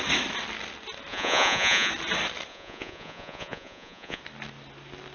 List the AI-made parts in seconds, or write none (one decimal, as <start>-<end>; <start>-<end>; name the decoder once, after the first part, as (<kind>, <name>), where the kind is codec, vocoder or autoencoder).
1.1-1.9 (vocoder, Vocos); 2.5-4.2